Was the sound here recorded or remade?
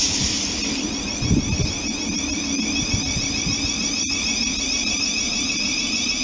recorded